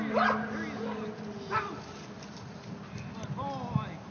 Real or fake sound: real